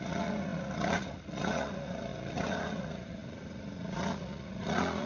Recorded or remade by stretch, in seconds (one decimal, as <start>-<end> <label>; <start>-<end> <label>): 0.0-5.1 remade